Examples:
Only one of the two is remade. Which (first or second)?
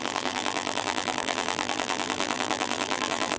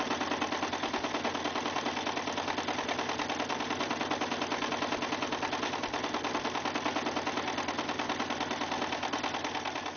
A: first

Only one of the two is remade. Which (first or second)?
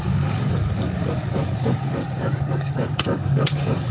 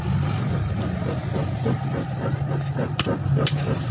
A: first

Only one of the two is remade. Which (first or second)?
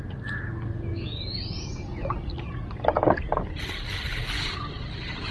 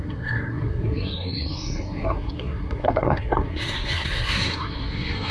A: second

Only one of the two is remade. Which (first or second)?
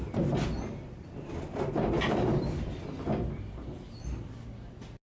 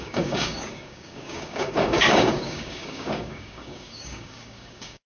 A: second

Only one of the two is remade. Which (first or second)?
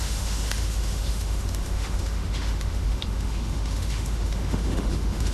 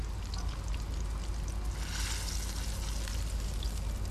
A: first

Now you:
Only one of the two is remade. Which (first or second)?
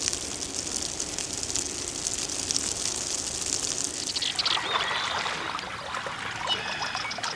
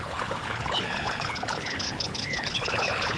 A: second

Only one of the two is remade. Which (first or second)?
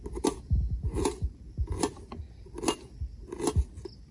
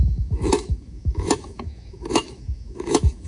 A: second